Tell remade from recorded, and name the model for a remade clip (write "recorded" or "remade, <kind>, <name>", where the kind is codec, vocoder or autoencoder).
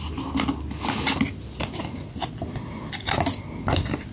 recorded